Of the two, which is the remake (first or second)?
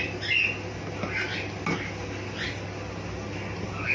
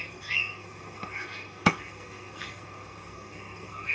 second